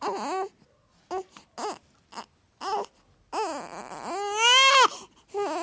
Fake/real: real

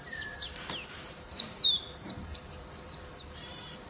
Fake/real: fake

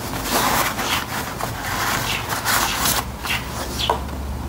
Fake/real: real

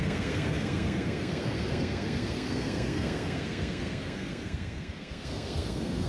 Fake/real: fake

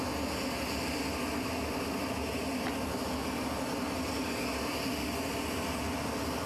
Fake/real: real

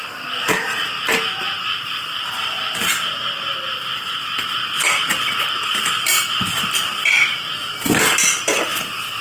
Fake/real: real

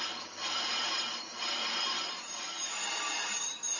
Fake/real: fake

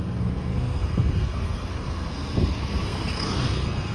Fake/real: fake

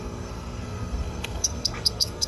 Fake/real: fake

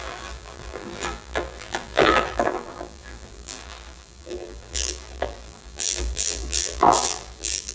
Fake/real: fake